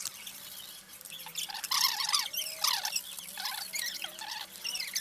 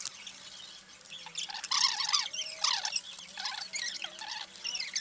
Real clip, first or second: second